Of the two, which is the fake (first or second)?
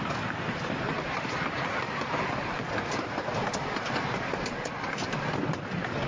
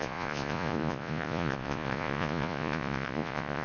second